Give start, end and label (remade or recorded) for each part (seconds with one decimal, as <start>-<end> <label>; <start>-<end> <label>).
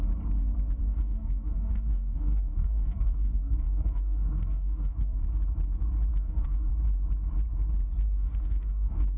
0.0-0.8 recorded; 0.8-5.2 remade; 5.2-6.1 recorded; 6.1-6.7 remade; 6.7-8.0 recorded; 8.0-9.2 remade